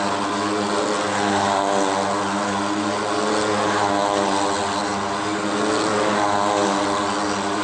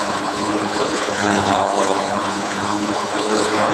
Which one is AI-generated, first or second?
second